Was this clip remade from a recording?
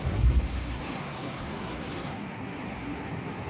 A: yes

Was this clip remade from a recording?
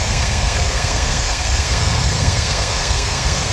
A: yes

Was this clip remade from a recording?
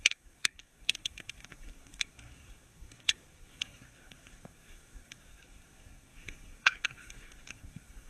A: yes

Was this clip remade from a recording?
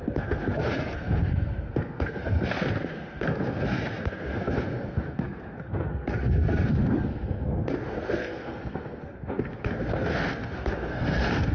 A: yes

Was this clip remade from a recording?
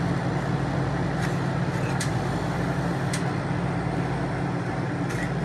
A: no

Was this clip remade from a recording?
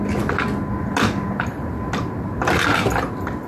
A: no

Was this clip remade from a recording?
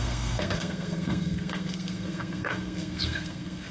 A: yes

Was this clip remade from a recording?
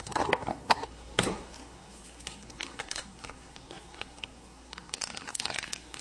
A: yes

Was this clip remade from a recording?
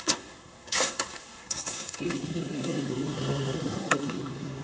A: yes